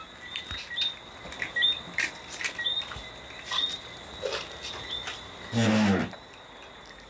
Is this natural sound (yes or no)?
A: yes